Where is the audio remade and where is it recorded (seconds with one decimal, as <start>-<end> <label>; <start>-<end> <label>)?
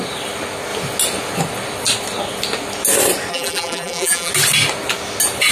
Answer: 0.0-3.3 recorded; 3.3-4.3 remade; 4.3-5.5 recorded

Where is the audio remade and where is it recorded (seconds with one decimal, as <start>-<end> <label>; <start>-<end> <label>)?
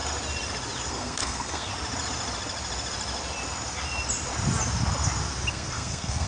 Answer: 0.0-0.9 recorded; 0.9-1.7 remade; 1.7-5.5 recorded; 5.5-6.3 remade